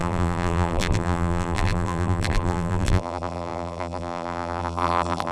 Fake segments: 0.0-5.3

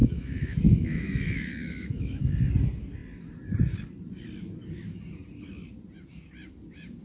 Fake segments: 0.0-2.2

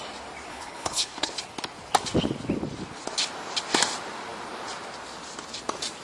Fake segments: 0.5-1.3

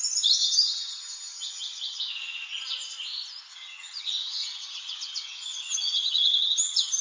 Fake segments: 0.4-2.0; 3.5-7.0

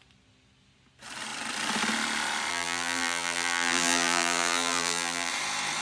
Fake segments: 2.5-5.3

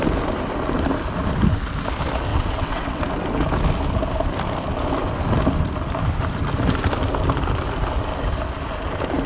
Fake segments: 2.3-3.0

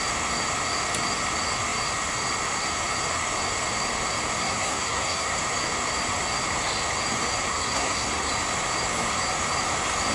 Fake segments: 4.4-5.4; 7.5-8.3

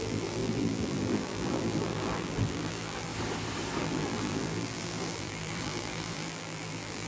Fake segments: 0.0-3.1; 3.8-7.1